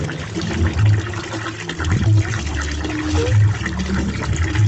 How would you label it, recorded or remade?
recorded